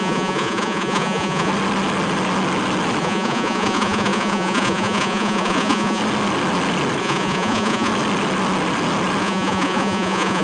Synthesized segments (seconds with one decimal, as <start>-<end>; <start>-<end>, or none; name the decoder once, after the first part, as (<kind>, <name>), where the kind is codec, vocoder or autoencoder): 0.0-1.5 (vocoder, Vocos); 3.0-6.0; 7.0-7.9; 9.2-10.4